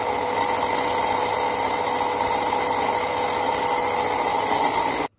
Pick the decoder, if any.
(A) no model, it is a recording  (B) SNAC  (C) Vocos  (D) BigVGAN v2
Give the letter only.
A